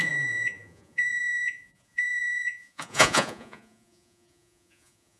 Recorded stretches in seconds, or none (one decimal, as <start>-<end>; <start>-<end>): none